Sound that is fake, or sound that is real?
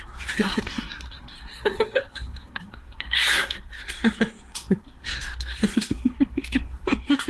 fake